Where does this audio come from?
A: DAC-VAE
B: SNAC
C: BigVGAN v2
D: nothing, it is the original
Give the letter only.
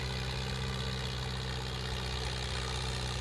D